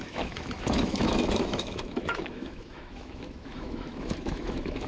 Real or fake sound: fake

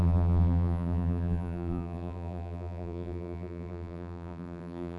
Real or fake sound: fake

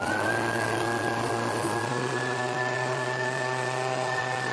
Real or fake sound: fake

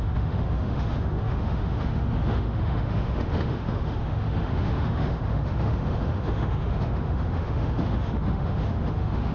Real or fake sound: fake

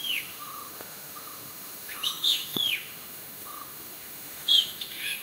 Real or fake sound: fake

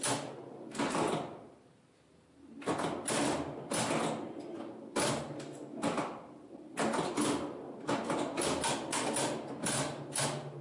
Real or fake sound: real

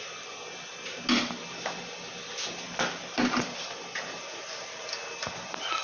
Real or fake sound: real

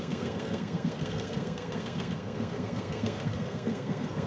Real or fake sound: fake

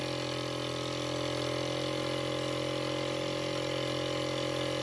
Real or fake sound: real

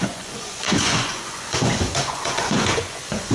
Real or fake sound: fake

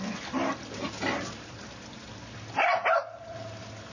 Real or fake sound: real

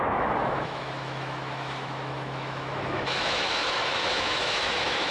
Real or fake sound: fake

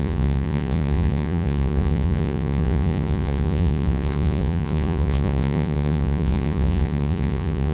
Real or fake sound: fake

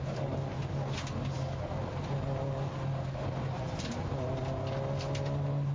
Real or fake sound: real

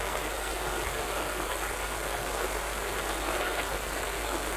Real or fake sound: fake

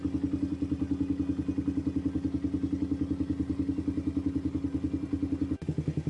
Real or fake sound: real